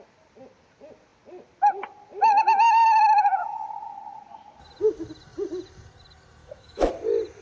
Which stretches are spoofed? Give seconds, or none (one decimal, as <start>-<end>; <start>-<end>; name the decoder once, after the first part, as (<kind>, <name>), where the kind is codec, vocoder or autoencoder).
6.4-6.9 (autoencoder, DAC-VAE)